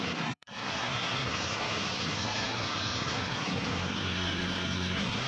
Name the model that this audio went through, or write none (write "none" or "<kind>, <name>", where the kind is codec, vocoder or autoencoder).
codec, SNAC